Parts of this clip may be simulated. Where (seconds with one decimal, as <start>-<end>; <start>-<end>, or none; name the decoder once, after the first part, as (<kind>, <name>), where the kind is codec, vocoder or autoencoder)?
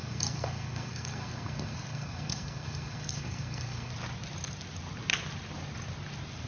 0.0-3.9 (codec, SNAC)